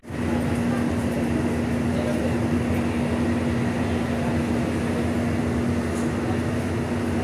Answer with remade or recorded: recorded